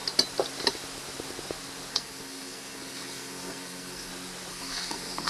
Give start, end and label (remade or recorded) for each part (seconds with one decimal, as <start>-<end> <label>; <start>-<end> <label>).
0.0-1.9 recorded; 1.9-4.1 remade; 4.1-4.5 recorded; 4.5-5.3 remade